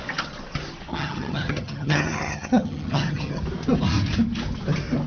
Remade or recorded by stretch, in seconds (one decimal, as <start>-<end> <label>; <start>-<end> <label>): 0.0-0.9 recorded; 0.9-3.4 remade; 3.4-5.1 recorded